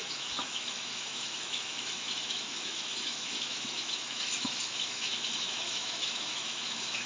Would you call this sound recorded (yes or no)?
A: no